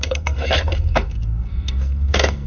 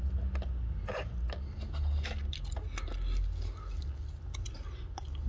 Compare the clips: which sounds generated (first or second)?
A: first